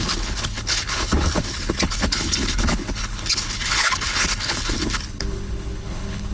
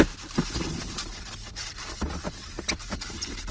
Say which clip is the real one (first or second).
second